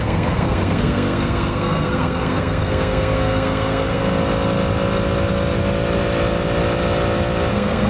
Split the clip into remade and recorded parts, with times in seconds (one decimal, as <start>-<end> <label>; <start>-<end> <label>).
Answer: 0.0-4.0 remade; 4.0-7.5 recorded; 7.5-7.9 remade